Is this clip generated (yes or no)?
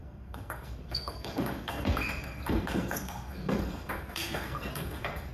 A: yes